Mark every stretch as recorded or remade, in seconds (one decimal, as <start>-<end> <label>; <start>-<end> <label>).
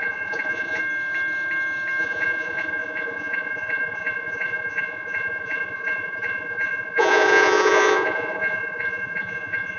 0.0-0.8 remade; 0.8-2.0 recorded; 2.0-9.8 remade